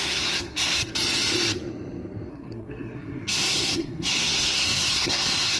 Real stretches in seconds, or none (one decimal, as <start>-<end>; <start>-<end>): 0.9-2.3